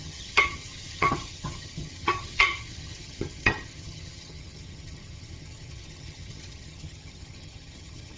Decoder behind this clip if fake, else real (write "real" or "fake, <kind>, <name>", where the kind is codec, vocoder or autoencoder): fake, vocoder, HiFi-GAN